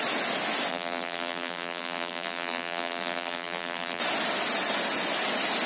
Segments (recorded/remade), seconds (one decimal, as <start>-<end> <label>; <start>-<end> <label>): 0.0-0.7 recorded; 0.7-4.0 remade; 4.0-5.7 recorded